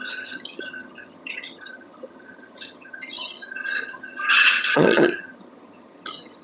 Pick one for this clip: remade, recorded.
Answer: remade